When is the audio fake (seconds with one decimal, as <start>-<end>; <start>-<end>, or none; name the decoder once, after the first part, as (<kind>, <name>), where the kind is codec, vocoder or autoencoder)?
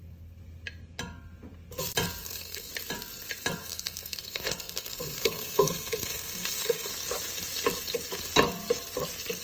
2.2-2.7 (codec, SNAC); 3.6-6.9